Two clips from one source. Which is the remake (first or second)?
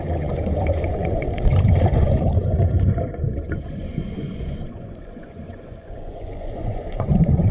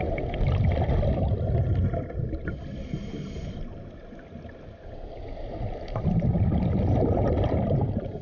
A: first